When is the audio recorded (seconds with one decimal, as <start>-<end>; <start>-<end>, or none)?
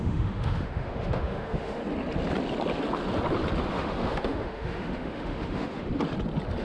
1.8-3.7; 5.9-6.6